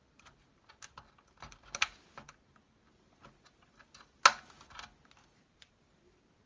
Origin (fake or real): real